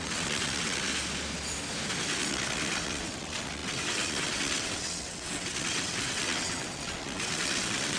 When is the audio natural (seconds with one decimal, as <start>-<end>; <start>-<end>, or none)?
0.9-2.2